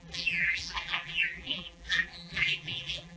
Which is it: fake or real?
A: fake